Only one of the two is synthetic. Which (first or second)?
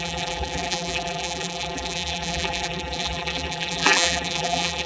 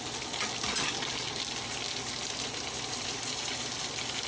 first